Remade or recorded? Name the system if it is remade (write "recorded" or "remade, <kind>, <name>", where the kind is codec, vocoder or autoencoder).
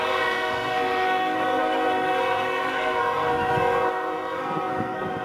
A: remade, codec, SNAC